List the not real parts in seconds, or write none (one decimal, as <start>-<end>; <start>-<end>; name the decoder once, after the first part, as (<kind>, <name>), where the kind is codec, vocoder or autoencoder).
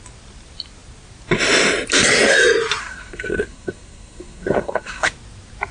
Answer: 2.8-5.1 (codec, SNAC)